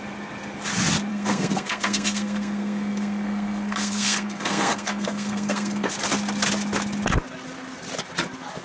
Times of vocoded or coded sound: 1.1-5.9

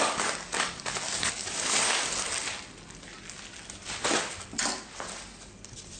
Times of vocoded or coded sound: 0.0-2.1

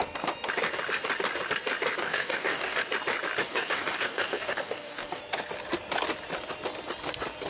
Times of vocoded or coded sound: 2.0-2.8; 3.5-5.2

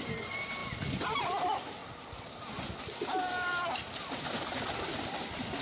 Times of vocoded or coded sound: none

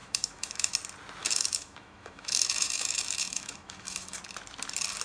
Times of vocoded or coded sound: 0.0-0.7; 1.2-4.2

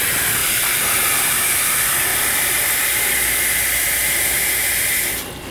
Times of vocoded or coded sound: 0.0-0.4; 0.9-2.1